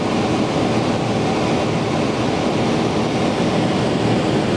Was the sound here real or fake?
real